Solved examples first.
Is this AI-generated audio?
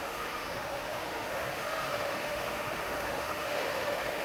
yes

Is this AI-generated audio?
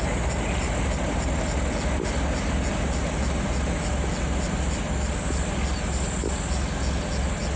no